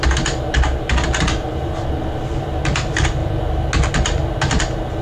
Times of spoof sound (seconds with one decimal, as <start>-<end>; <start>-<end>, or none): none